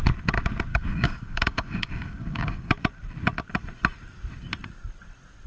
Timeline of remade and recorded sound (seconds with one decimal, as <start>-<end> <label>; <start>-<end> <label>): 0.0-0.7 recorded; 0.7-2.7 remade; 2.7-5.5 recorded